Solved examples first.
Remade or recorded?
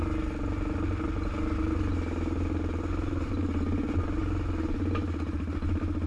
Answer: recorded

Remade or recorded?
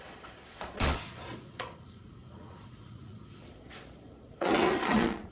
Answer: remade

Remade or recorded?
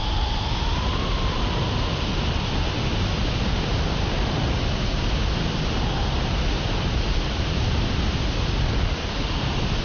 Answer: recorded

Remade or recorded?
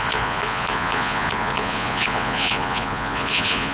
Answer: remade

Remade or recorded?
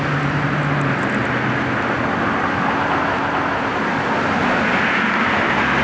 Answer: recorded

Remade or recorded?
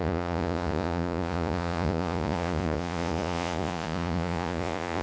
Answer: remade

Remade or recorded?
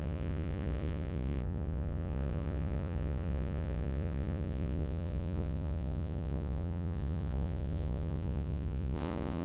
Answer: remade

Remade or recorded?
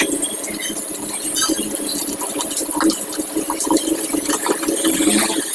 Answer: recorded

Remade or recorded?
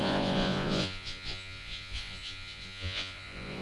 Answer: remade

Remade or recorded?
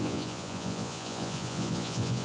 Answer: remade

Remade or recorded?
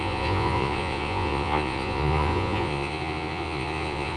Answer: remade